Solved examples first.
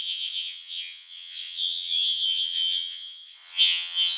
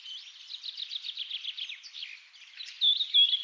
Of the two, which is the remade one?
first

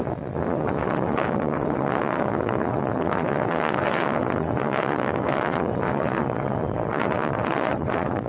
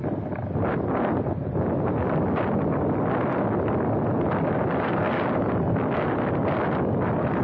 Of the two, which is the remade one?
first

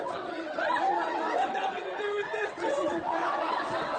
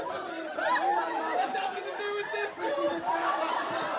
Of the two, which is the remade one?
first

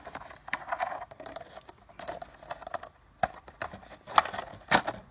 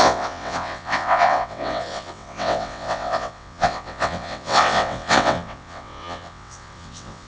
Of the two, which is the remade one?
second